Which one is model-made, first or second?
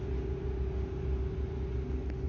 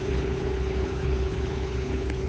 second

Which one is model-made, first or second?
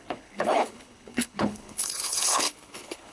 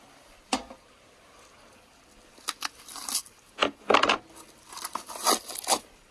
first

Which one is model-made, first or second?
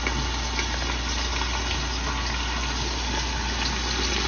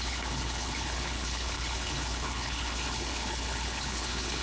second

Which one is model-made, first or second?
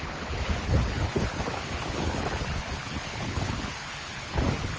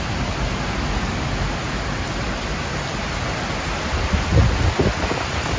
first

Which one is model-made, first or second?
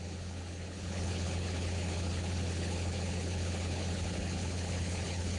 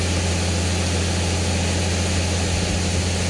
first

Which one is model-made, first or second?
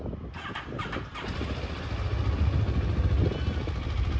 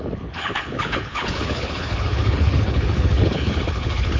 second